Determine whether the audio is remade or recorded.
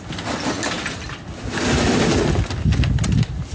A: recorded